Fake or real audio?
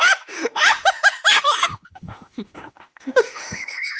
fake